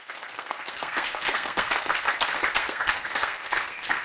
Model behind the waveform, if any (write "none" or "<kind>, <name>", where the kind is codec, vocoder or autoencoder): codec, SNAC